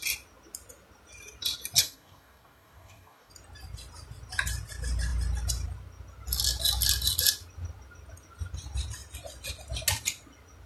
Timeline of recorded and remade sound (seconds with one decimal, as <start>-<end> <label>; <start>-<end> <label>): 0.0-1.8 recorded; 1.8-3.3 remade; 3.3-10.7 recorded

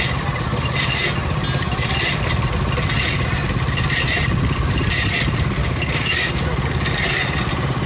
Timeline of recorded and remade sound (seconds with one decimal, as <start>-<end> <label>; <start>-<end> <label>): 0.0-5.6 recorded; 5.6-6.3 remade; 6.3-7.9 recorded

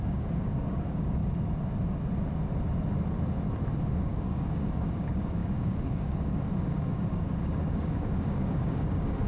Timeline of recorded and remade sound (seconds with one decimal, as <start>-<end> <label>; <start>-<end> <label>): 0.0-1.2 remade; 1.2-3.9 recorded; 3.9-9.3 remade

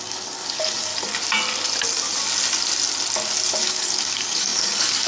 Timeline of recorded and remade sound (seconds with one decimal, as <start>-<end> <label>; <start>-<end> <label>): 0.0-0.9 remade; 0.9-3.6 recorded; 3.6-5.1 remade

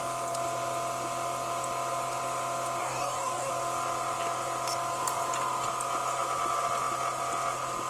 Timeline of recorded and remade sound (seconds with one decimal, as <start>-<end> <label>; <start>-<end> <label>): 0.0-2.8 recorded; 2.8-3.5 remade; 3.5-7.9 recorded

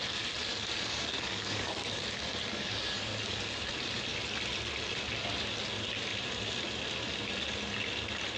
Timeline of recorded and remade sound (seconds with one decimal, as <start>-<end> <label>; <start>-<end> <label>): 0.0-0.5 recorded; 0.5-2.0 remade; 2.0-2.4 recorded; 2.4-3.4 remade; 3.4-8.4 recorded